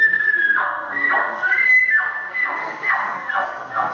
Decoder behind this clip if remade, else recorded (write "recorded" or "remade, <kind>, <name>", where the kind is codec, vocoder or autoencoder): remade, codec, SNAC